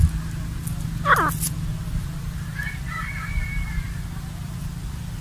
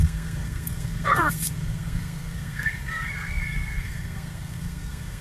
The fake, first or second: second